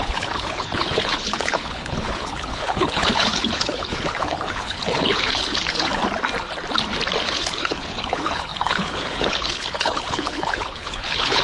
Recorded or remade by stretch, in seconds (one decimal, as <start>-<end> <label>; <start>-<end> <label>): 0.0-6.0 remade; 6.0-7.2 recorded; 7.2-11.4 remade